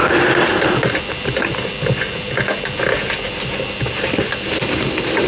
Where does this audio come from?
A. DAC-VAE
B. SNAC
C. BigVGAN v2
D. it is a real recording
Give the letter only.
D